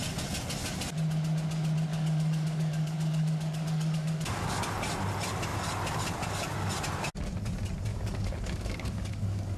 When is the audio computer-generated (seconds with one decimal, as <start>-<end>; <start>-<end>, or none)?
1.9-4.6; 7.9-9.6